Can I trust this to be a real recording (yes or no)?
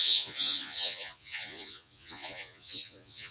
no